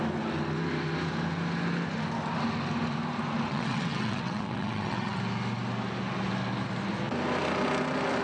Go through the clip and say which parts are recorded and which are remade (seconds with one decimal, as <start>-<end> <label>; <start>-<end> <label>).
0.0-3.5 recorded; 3.5-5.2 remade; 5.2-8.2 recorded